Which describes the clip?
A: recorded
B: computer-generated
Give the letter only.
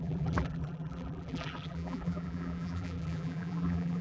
B